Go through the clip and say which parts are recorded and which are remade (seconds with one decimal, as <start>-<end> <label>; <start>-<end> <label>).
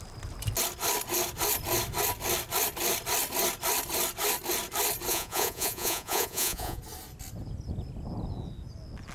0.0-5.1 recorded; 5.1-6.8 remade; 6.8-9.1 recorded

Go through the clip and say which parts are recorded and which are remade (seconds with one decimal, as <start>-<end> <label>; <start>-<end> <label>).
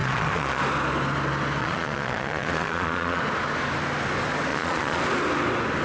0.0-0.6 remade; 0.6-1.6 recorded; 1.6-3.2 remade; 3.2-4.5 recorded; 4.5-5.0 remade; 5.0-5.8 recorded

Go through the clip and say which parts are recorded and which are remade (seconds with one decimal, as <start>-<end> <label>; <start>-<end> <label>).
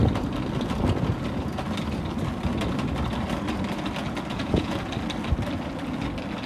0.0-4.3 recorded; 4.3-4.9 remade; 4.9-6.5 recorded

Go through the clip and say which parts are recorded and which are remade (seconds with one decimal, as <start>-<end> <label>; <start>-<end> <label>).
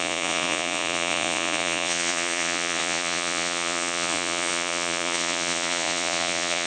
0.0-6.7 remade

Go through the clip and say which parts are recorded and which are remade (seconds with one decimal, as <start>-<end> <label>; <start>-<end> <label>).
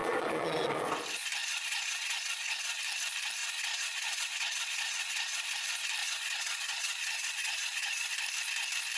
0.0-0.9 remade; 0.9-1.4 recorded; 1.4-2.8 remade; 2.8-3.4 recorded; 3.4-5.5 remade; 5.5-6.0 recorded; 6.0-8.1 remade; 8.1-9.0 recorded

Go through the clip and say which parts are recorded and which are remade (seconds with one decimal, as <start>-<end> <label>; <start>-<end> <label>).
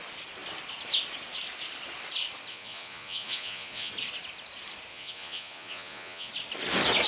0.0-2.5 recorded; 2.5-3.9 remade; 3.9-4.9 recorded; 4.9-6.3 remade; 6.3-7.1 recorded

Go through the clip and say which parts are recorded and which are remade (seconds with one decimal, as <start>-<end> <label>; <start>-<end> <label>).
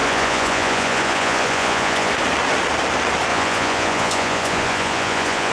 0.0-2.1 remade; 2.1-3.3 recorded; 3.3-5.5 remade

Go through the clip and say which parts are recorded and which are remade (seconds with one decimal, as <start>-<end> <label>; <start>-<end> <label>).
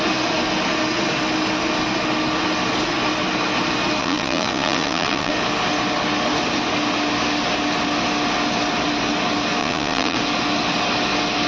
0.0-4.0 recorded; 4.0-5.3 remade; 5.3-9.6 recorded; 9.6-10.2 remade; 10.2-11.5 recorded